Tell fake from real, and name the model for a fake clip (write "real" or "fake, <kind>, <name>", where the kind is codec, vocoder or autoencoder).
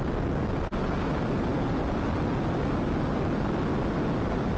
real